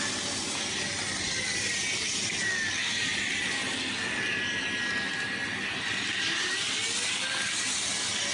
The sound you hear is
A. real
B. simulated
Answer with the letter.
A